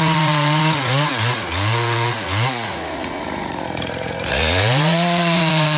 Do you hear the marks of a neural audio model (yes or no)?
yes